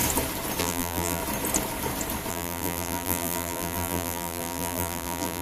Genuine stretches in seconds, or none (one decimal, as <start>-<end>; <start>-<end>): 0.0-0.6; 1.2-2.3